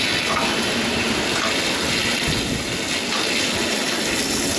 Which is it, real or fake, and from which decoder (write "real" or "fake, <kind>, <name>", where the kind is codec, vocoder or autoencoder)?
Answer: real